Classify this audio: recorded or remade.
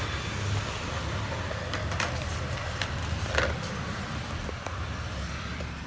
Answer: recorded